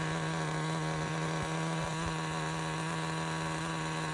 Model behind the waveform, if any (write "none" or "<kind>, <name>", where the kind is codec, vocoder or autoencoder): none